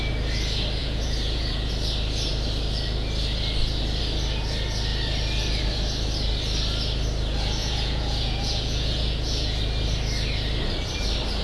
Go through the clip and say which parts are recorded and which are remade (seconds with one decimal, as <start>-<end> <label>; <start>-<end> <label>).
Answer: 0.0-0.8 recorded; 0.8-1.7 remade; 1.7-7.6 recorded; 7.6-9.6 remade; 9.6-11.4 recorded